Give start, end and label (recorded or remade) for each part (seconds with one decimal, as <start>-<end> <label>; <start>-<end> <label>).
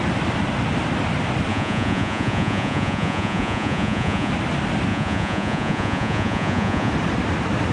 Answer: 0.0-1.5 recorded; 1.5-4.3 remade; 4.3-4.9 recorded; 4.9-6.9 remade; 6.9-7.7 recorded